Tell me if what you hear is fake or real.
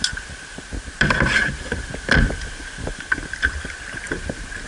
real